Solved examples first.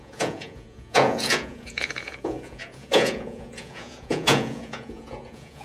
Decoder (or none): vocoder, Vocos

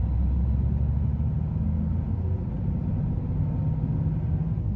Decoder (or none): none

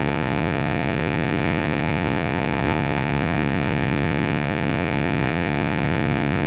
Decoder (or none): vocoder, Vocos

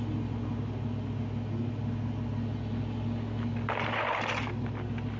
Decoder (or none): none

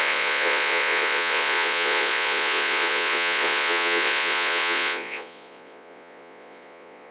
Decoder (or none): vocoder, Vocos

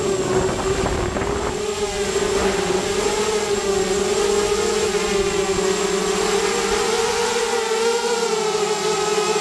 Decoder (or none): none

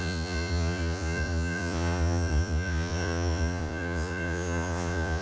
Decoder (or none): vocoder, Vocos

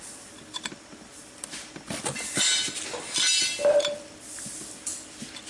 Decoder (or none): none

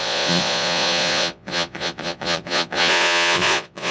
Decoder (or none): vocoder, Vocos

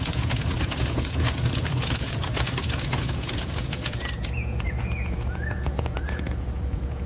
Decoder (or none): vocoder, Vocos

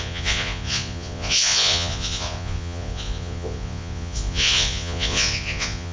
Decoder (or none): vocoder, Vocos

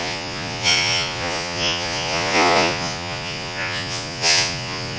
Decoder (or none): vocoder, Vocos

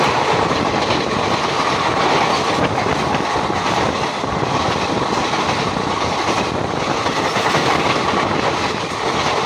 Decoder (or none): none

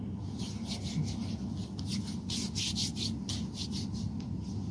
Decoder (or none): none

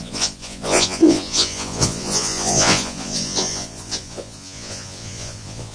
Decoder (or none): vocoder, Vocos